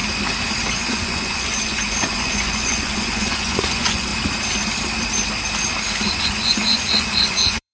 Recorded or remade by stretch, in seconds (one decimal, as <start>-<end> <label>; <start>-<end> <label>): 0.0-0.7 recorded; 0.7-4.1 remade; 4.1-6.2 recorded; 6.2-7.7 remade